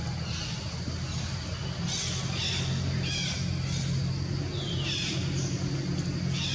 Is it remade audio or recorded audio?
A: recorded